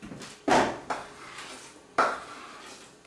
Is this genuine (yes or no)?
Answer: yes